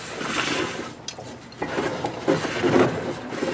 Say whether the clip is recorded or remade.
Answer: recorded